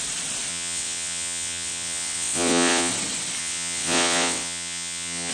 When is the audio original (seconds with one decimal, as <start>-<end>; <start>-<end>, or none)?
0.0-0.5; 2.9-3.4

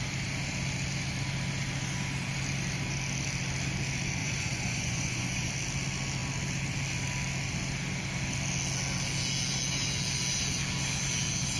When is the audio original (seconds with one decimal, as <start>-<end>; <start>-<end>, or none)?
0.0-4.2; 5.5-11.6

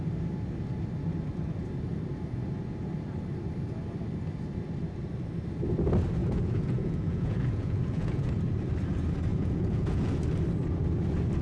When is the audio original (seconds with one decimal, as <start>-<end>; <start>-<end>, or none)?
0.0-6.2; 8.3-9.3; 10.1-11.4

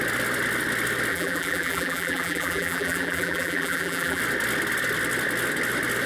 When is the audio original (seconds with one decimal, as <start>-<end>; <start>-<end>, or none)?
0.0-1.1; 4.2-6.1